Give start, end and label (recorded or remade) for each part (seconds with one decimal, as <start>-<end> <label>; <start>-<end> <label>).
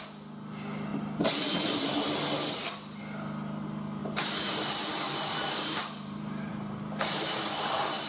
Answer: 0.0-4.0 recorded; 4.0-7.4 remade; 7.4-8.1 recorded